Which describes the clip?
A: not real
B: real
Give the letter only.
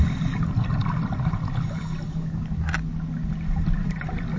B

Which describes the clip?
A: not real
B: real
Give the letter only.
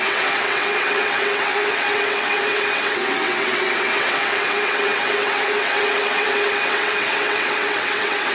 A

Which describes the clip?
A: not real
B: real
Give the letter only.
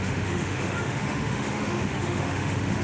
A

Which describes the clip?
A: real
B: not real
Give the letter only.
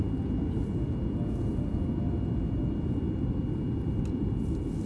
A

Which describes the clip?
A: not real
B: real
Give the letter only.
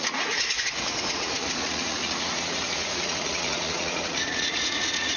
A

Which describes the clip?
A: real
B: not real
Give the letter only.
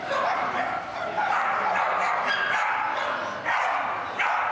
A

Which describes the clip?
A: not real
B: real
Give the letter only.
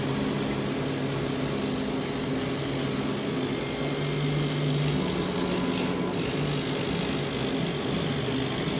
B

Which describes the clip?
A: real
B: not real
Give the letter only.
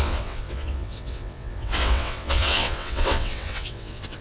B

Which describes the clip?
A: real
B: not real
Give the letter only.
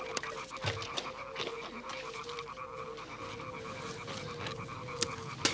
A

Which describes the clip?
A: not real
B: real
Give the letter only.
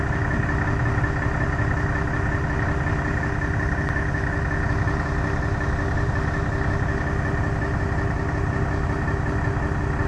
B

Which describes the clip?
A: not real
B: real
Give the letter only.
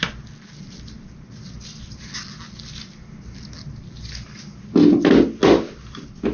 B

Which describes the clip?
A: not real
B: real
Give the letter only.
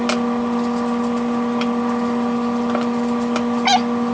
B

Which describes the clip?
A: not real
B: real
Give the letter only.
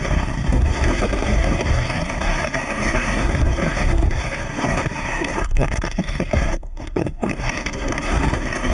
A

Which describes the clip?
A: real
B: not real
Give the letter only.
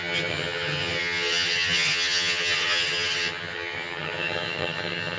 B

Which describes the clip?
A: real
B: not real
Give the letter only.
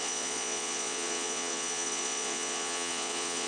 B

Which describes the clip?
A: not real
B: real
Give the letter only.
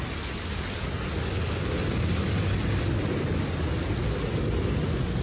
B